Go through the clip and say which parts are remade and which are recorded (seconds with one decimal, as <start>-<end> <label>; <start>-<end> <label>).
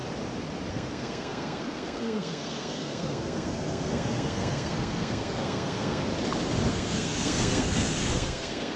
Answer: 0.0-0.7 recorded; 0.7-6.1 remade; 6.1-6.7 recorded; 6.7-8.8 remade